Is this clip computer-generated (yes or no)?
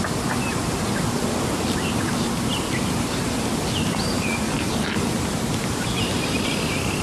no